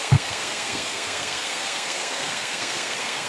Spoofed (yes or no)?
yes